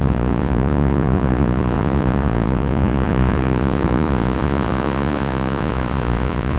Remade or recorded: remade